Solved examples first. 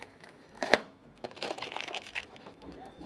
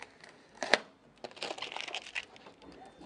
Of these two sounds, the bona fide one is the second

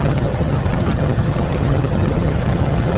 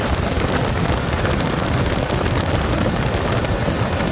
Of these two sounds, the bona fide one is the second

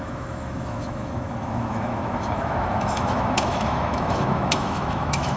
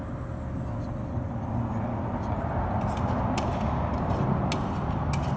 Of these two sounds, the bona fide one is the second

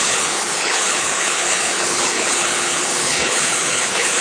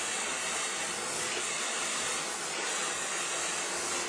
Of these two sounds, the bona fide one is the second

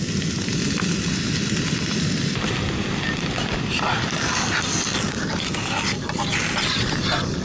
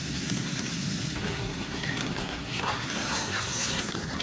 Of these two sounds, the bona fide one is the first